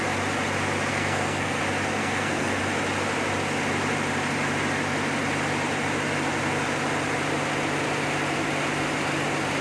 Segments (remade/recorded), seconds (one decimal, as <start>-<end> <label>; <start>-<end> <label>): 0.0-0.9 recorded; 0.9-1.6 remade; 1.6-2.0 recorded; 2.0-2.6 remade; 2.6-9.6 recorded